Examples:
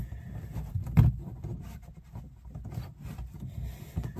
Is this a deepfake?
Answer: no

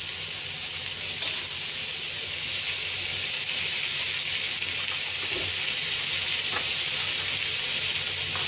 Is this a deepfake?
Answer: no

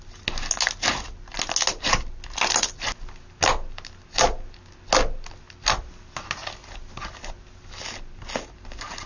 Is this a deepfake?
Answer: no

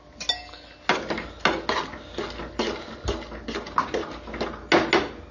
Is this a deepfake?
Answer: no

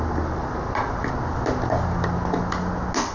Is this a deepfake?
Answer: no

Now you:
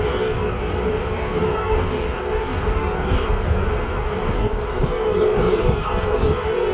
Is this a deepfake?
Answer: yes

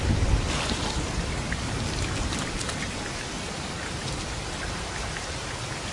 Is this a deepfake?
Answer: yes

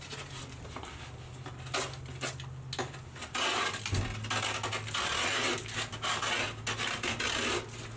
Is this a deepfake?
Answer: no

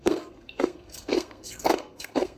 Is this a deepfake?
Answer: yes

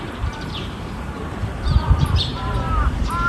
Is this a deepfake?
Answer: yes